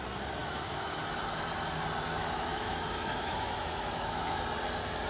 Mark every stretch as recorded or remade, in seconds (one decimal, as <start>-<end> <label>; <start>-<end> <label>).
0.0-0.4 recorded; 0.4-1.0 remade; 1.0-2.2 recorded; 2.2-4.4 remade; 4.4-5.1 recorded